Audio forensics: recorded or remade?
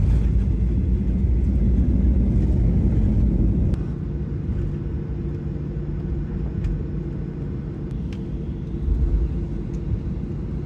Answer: recorded